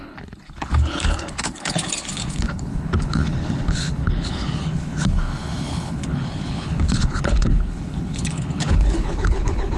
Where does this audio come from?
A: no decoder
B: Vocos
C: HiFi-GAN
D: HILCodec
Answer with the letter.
D